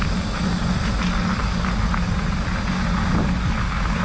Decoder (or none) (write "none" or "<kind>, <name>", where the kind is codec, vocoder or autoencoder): none